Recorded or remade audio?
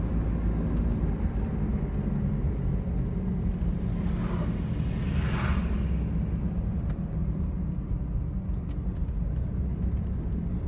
recorded